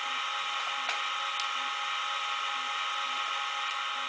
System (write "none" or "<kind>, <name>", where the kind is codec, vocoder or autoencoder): none